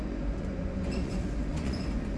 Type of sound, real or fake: fake